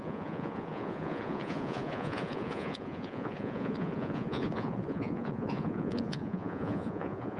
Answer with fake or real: fake